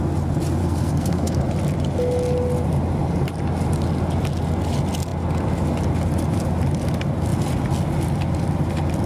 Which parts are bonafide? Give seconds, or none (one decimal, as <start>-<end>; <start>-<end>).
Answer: 0.0-0.6; 1.4-9.1

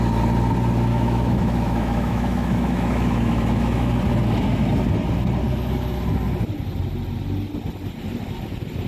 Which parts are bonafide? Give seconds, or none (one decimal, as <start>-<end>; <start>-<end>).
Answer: 0.0-0.9; 3.9-8.9

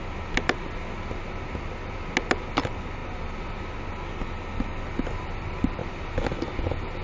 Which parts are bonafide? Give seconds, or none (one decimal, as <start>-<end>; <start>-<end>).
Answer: 0.0-7.0